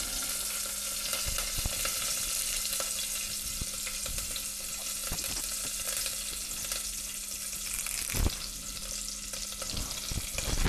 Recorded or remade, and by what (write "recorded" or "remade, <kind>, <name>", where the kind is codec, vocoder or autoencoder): recorded